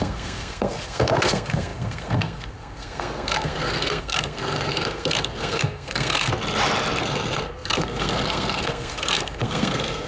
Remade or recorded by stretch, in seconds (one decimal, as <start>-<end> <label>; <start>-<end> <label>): 0.0-6.3 remade; 6.3-7.0 recorded; 7.0-10.1 remade